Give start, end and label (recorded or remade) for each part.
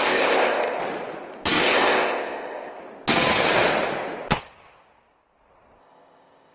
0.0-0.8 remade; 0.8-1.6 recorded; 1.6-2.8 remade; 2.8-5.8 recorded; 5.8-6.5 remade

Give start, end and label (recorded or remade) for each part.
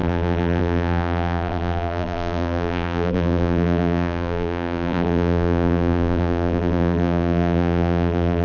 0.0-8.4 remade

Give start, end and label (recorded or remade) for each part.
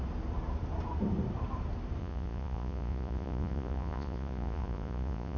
0.0-2.0 recorded; 2.0-5.4 remade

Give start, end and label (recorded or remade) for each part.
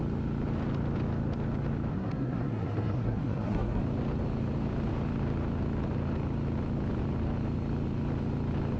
0.0-1.9 recorded; 1.9-3.8 remade; 3.8-8.8 recorded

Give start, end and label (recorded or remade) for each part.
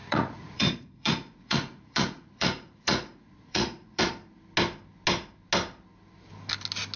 0.0-4.0 remade; 4.0-7.0 recorded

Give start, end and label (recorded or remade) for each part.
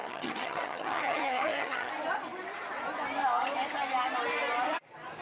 0.0-1.9 remade; 1.9-5.2 recorded